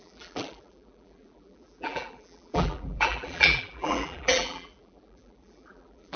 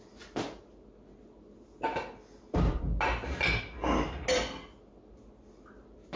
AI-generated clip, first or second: first